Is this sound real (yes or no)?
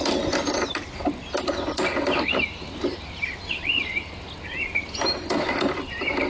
yes